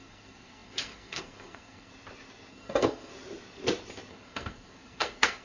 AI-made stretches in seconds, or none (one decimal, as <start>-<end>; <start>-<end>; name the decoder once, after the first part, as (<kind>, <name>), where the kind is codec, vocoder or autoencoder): 0.0-1.9 (codec, SNAC); 2.5-3.1; 4.1-5.4